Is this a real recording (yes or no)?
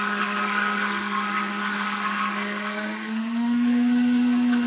no